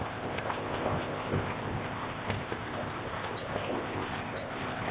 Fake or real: fake